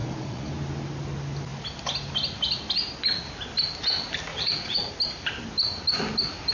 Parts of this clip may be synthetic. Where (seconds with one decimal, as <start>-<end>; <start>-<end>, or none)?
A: 0.0-0.5; 4.3-4.9